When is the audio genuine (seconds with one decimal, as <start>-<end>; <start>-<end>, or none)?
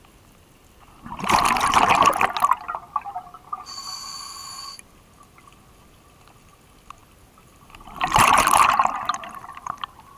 0.0-7.0